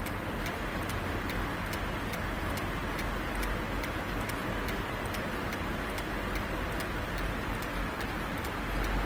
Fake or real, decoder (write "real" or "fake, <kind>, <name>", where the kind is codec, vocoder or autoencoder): real